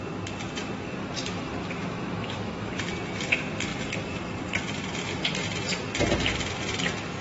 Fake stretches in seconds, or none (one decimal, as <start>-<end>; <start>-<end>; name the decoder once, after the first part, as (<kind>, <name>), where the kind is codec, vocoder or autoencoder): 1.0-2.8 (autoencoder, DAC-VAE)